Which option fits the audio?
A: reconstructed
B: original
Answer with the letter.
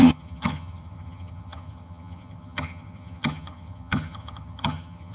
A